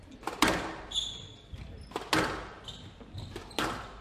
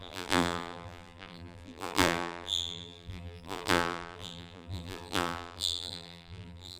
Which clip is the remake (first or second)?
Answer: second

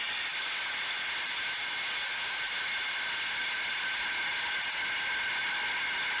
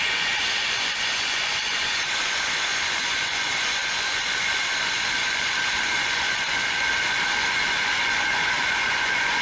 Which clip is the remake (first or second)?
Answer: second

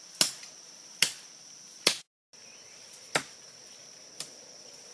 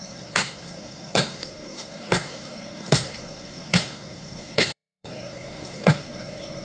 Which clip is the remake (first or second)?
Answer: second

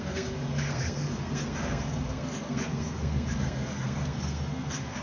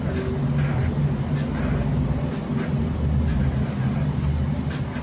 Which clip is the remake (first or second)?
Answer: first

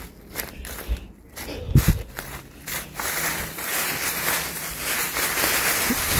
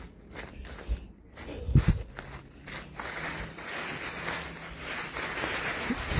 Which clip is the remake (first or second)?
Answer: first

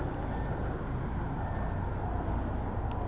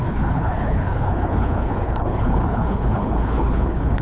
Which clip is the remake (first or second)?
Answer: second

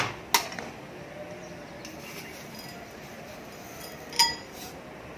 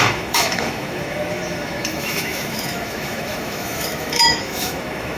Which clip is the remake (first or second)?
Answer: second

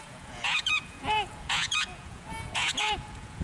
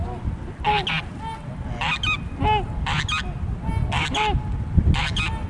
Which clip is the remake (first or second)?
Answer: first